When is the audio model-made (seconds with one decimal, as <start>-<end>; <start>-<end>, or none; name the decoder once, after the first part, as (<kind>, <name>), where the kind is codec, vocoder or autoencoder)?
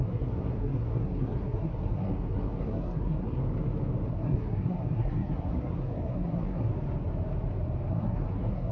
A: 0.0-3.4 (codec, SNAC); 4.1-6.7; 7.9-8.7